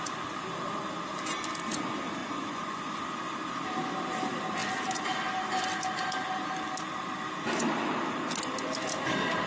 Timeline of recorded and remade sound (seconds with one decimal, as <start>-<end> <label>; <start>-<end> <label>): 0.0-2.2 recorded; 2.2-2.8 remade; 2.8-9.5 recorded